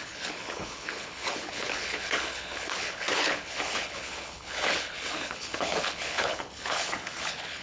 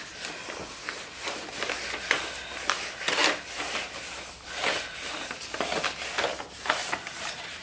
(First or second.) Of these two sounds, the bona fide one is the second